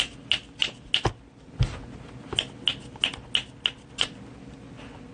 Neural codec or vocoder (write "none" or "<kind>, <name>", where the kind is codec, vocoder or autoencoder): none